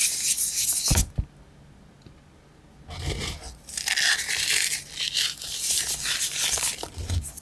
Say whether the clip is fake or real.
real